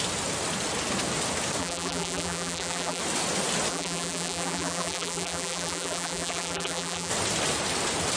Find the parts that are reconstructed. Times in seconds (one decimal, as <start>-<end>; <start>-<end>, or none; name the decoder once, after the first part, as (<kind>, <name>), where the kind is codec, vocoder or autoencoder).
1.6-3.0 (vocoder, BigVGAN v2); 3.7-7.1